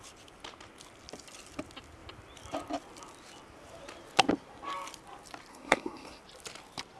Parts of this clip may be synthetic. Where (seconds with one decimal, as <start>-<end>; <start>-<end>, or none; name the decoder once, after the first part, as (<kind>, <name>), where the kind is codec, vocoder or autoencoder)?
5.5-6.2 (codec, SNAC)